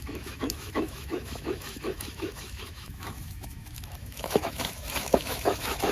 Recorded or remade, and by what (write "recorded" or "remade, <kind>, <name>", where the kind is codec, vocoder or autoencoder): remade, autoencoder, DAC-VAE